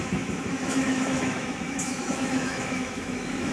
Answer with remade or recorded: remade